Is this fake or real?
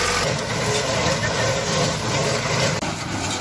real